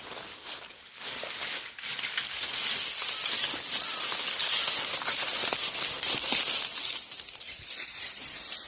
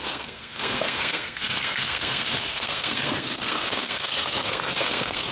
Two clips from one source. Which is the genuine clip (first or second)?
first